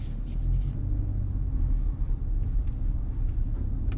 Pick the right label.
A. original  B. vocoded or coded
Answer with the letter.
A